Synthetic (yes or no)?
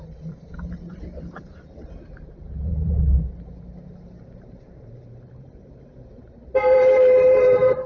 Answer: yes